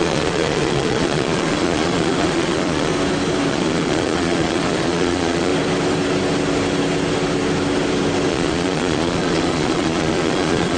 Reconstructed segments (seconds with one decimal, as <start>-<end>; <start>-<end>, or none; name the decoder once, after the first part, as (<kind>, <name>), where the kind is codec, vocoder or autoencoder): 0.0-2.9 (vocoder, Vocos); 3.5-5.5; 8.3-10.8